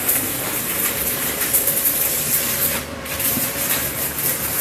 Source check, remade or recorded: remade